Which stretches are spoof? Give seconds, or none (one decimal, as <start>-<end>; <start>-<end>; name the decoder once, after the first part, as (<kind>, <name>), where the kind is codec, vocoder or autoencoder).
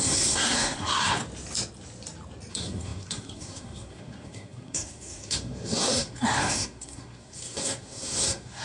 0.0-1.2 (codec, SNAC); 2.5-8.6